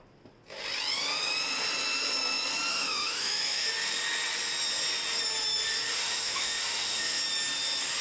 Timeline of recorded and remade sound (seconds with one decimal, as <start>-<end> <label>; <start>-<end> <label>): 0.0-2.7 recorded; 2.7-3.7 remade; 3.7-5.9 recorded; 5.9-7.2 remade; 7.2-8.0 recorded